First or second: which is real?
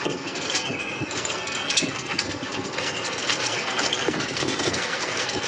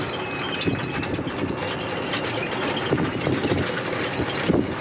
second